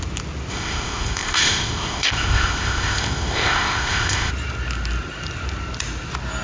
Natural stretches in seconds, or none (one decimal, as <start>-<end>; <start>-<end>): 0.0-0.5; 4.3-6.4